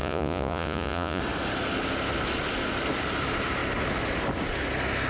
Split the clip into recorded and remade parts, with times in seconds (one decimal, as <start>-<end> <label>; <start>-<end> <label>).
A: 0.0-1.2 remade; 1.2-5.1 recorded